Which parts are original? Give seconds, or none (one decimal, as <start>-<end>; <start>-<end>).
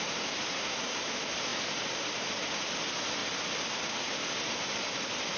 0.0-0.5; 1.0-5.4